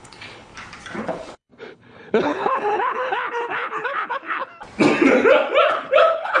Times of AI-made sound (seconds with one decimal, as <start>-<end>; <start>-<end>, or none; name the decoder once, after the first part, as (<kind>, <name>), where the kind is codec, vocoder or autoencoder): 0.0-0.5 (codec, HILCodec); 1.0-4.5; 5.7-6.4